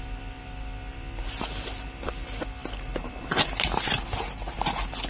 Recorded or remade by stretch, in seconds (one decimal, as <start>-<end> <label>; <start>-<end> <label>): 0.0-5.1 recorded